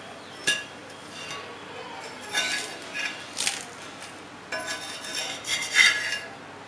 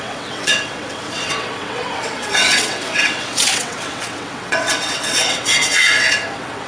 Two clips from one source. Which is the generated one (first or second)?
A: second